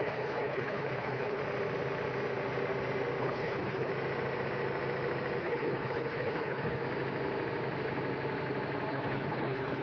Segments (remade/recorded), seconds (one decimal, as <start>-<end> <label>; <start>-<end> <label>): 0.0-1.4 remade; 1.4-3.2 recorded; 3.2-3.9 remade; 3.9-5.4 recorded; 5.4-6.8 remade; 6.8-8.9 recorded; 8.9-9.8 remade